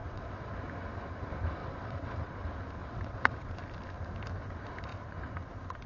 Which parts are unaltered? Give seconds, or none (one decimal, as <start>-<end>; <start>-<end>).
0.5-1.6; 2.3-2.8; 3.6-5.9